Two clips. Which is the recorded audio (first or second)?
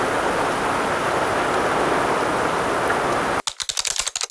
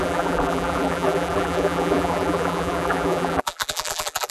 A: first